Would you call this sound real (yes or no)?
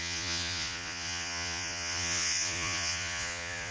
no